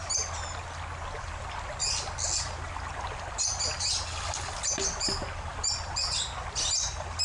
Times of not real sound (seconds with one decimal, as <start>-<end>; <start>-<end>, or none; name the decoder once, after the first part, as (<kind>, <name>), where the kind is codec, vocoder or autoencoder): none